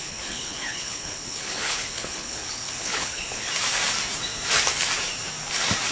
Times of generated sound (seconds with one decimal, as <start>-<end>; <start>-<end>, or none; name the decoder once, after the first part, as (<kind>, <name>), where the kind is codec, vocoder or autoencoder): 0.0-3.5 (codec, HILCodec)